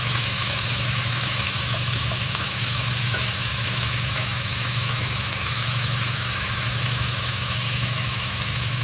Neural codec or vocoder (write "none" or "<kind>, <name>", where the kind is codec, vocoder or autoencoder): autoencoder, DAC-VAE